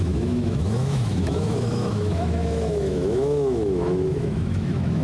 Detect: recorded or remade remade